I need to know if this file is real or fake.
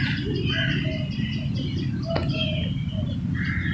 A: real